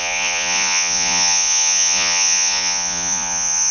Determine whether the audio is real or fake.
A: fake